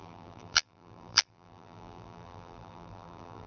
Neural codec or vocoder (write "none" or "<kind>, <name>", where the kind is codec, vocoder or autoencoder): vocoder, BigVGAN v2